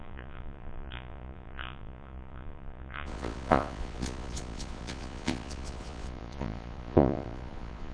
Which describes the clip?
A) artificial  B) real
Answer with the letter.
A